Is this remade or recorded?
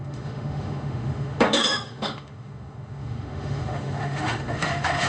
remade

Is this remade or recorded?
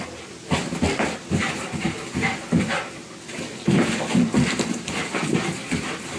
recorded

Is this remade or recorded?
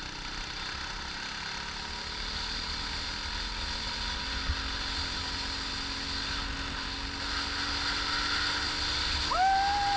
recorded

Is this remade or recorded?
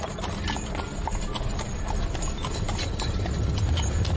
recorded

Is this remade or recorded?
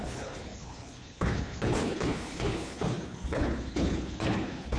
remade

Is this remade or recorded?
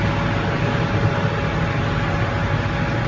recorded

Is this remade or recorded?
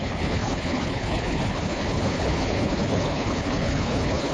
remade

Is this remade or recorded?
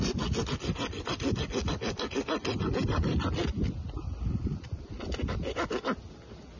recorded